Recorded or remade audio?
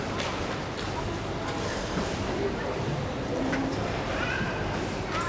remade